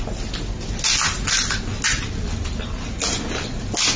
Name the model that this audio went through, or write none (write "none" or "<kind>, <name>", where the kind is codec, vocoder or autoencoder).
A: none